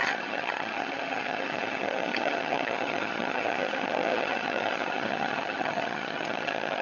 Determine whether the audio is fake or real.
fake